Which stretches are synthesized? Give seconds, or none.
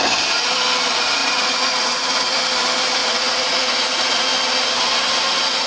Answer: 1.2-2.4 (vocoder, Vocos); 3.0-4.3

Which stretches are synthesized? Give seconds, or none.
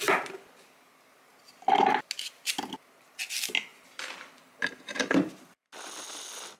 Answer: 3.7-5.3 (vocoder, BigVGAN v2)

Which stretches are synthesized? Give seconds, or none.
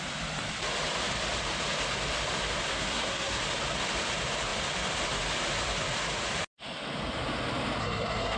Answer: 2.7-3.4 (codec, SNAC); 7.8-8.4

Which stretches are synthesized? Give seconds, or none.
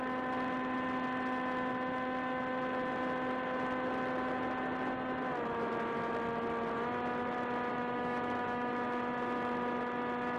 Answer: 7.7-8.7 (autoencoder, DAC-VAE)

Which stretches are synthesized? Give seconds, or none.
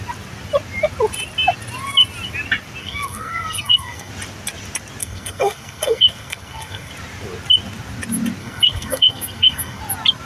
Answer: 2.8-4.1 (codec, SNAC); 5.0-6.9; 8.4-9.8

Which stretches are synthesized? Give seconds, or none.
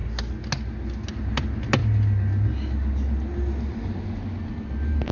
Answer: none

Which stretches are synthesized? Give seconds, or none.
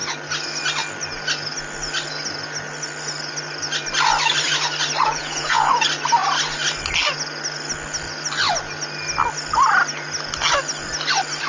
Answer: 5.0-5.7 (vocoder, Vocos)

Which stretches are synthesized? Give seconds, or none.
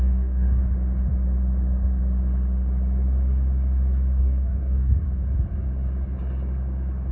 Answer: 0.0-0.6 (codec, DAC); 4.2-5.0